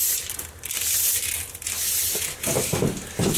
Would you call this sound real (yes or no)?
yes